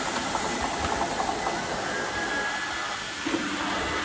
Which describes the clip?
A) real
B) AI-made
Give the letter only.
A